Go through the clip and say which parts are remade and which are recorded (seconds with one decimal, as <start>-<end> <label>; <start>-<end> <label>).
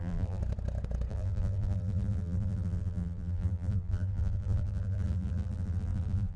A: 0.0-0.4 remade; 0.4-1.1 recorded; 1.1-6.4 remade